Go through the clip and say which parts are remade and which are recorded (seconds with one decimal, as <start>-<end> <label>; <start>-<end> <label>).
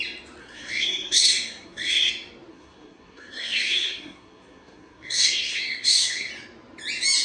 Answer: 0.0-0.4 recorded; 0.4-2.1 remade; 2.1-2.5 recorded; 2.5-6.3 remade; 6.3-7.2 recorded